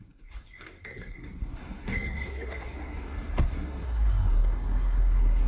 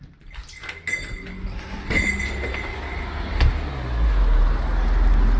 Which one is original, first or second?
second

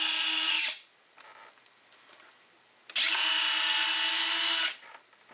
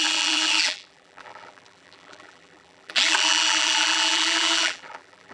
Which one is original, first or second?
first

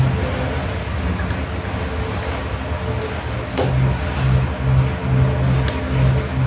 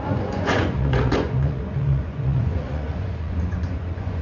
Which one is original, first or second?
first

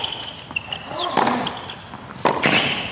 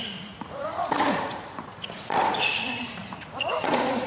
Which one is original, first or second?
first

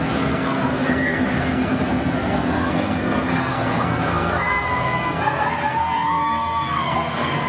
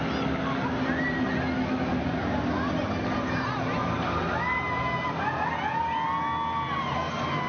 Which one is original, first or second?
second